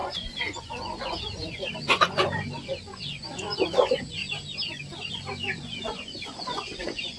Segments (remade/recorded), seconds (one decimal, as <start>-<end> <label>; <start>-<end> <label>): 0.0-4.2 remade; 4.2-5.1 recorded; 5.1-7.2 remade